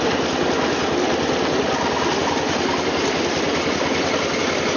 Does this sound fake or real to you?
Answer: real